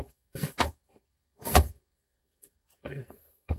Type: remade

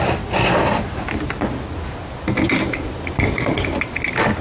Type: recorded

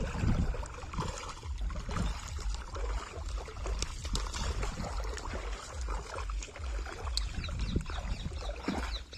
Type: recorded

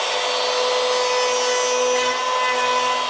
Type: recorded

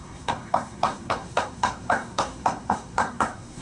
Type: remade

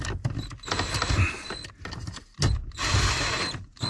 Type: recorded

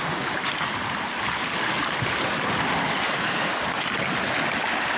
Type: recorded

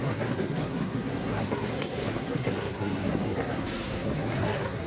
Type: remade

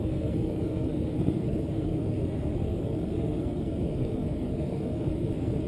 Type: remade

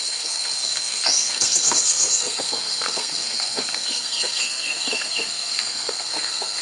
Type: remade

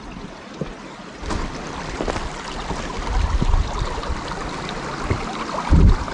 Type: recorded